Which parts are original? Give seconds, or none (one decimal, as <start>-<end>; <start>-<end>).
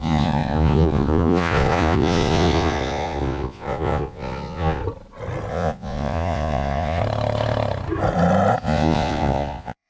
4.8-5.5; 7.0-8.6